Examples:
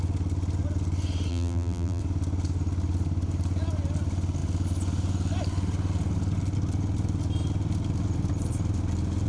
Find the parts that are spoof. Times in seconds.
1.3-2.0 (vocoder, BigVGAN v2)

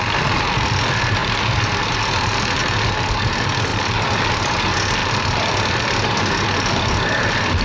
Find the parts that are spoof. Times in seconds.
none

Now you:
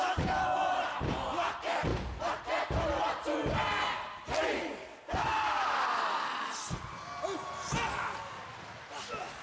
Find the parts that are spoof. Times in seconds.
none

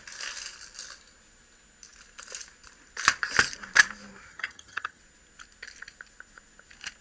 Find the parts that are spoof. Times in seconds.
4.3-5.0 (vocoder, HiFi-GAN)